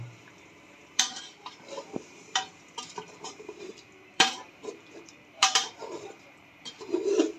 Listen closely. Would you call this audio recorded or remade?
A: remade